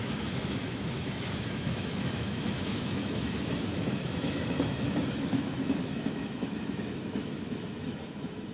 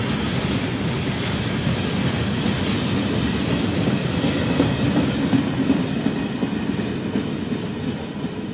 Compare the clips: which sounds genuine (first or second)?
second